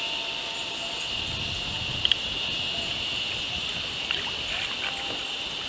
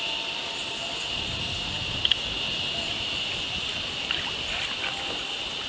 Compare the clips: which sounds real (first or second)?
first